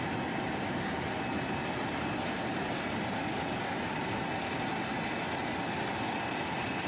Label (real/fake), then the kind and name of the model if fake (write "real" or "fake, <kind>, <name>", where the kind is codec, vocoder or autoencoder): real